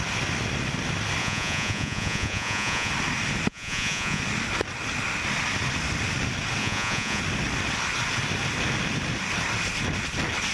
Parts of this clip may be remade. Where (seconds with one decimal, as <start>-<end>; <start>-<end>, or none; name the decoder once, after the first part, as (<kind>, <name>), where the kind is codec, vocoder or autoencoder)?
1.2-2.9 (vocoder, Vocos); 3.5-4.2; 6.6-7.2

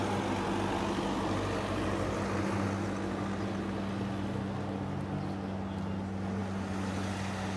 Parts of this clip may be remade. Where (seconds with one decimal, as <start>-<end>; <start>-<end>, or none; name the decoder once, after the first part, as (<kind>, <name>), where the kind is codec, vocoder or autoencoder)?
none